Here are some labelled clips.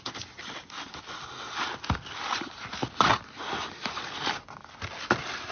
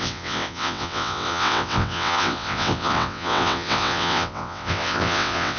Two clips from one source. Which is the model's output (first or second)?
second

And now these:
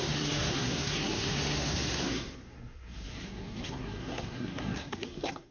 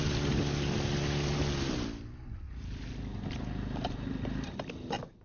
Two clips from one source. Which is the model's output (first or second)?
first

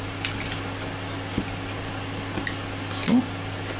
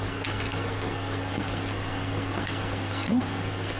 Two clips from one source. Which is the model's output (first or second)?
second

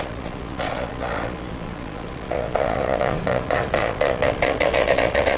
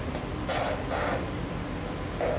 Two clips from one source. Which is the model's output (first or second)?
first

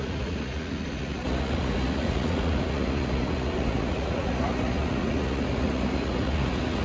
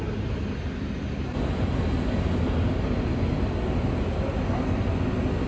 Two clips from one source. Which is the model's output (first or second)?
first